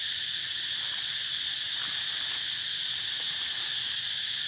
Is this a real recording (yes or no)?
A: yes